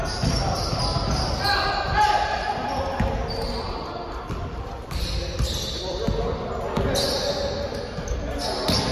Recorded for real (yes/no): yes